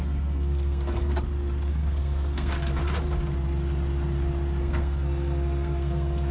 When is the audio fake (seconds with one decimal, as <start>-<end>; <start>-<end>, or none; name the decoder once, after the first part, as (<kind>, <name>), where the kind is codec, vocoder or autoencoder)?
0.0-1.1 (codec, SNAC); 1.7-2.5; 4.6-6.3